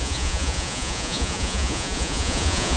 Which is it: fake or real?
fake